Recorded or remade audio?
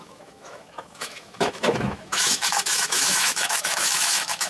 remade